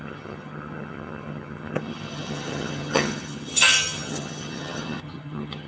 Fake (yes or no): yes